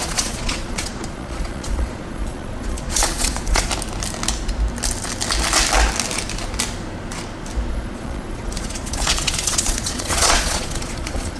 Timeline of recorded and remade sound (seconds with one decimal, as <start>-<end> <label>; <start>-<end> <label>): 0.0-3.7 remade; 3.7-7.7 recorded; 7.7-11.4 remade